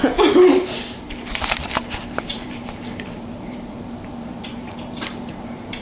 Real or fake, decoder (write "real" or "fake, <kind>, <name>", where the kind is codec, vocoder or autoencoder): fake, vocoder, BigVGAN v2